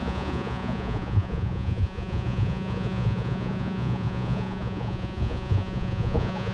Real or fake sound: fake